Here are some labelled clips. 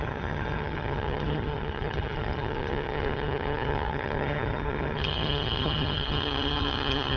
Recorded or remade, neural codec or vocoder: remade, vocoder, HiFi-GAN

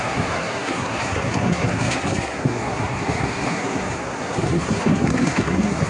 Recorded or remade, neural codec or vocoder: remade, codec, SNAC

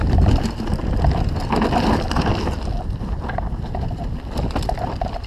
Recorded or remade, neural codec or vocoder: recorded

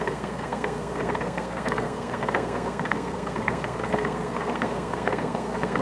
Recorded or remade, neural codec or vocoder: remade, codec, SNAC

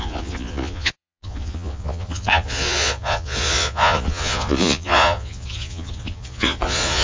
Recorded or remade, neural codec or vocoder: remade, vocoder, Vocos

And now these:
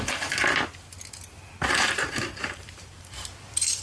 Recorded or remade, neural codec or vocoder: remade, vocoder, BigVGAN v2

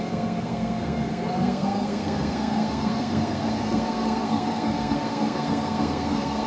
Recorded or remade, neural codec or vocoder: remade, codec, SNAC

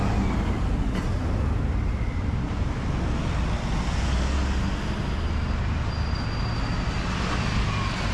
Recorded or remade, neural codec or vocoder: recorded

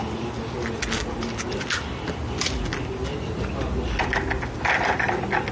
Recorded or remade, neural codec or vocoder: recorded